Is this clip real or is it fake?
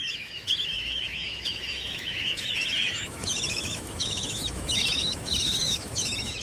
fake